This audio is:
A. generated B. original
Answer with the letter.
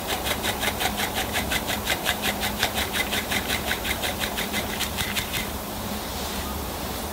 A